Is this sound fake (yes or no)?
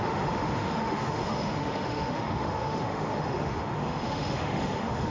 yes